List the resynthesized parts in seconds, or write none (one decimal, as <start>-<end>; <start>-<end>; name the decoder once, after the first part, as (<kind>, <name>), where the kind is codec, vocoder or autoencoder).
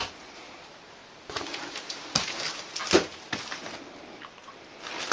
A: 1.0-2.6 (vocoder, BigVGAN v2); 3.1-3.8